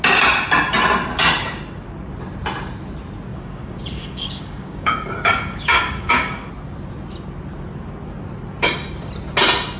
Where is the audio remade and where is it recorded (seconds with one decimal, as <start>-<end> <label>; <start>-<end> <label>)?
0.0-3.3 recorded; 3.3-6.5 remade; 6.5-9.8 recorded